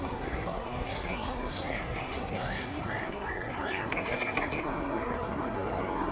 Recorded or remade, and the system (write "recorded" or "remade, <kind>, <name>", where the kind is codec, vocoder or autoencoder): remade, codec, SNAC